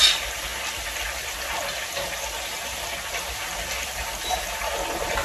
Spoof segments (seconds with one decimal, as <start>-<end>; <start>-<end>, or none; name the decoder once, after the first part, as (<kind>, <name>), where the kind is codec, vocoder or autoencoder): none